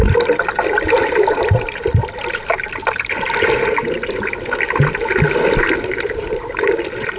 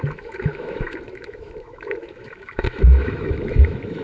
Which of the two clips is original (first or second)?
first